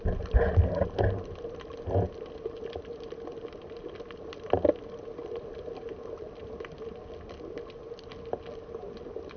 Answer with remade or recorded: recorded